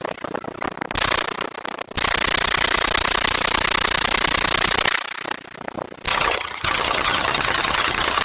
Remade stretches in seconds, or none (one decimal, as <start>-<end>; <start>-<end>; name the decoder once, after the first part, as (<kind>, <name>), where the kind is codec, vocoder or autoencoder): 6.1-8.2 (vocoder, HiFi-GAN)